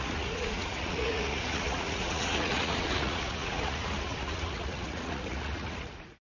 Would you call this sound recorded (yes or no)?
no